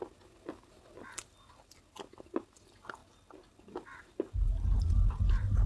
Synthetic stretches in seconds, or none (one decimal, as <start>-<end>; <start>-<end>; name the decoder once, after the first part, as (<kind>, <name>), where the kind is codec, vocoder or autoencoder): none